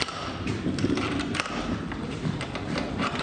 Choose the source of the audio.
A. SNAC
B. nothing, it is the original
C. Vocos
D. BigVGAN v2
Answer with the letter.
D